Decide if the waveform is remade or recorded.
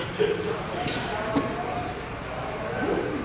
recorded